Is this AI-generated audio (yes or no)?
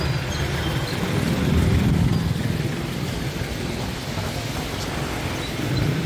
no